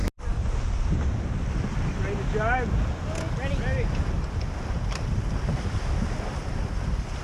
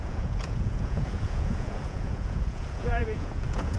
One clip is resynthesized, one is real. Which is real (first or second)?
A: first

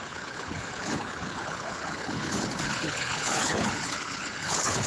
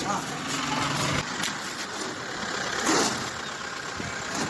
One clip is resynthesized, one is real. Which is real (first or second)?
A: second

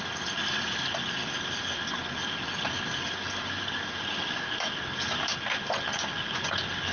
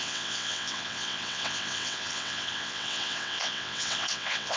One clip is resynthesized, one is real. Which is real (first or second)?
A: first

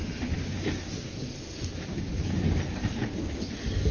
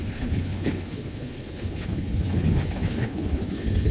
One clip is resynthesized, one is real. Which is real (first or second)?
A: first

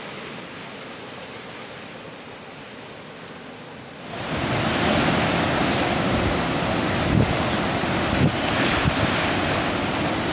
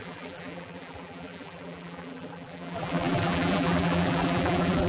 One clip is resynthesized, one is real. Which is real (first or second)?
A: first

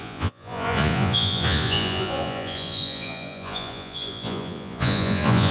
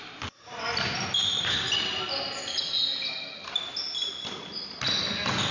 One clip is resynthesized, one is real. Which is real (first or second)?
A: second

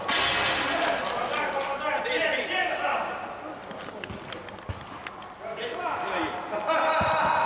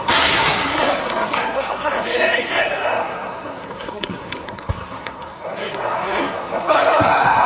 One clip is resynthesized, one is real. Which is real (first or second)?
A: first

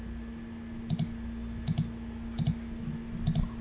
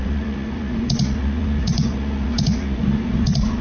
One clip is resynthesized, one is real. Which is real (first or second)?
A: first